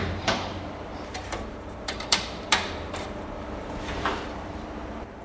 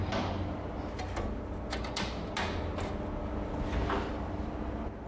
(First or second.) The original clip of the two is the second